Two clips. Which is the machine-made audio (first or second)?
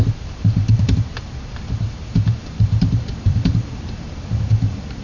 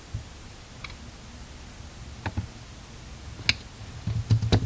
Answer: first